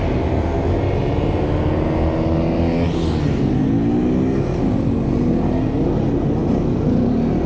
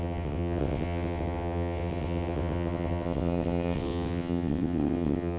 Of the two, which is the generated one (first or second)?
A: second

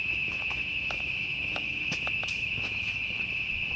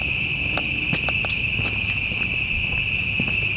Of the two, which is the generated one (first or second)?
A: first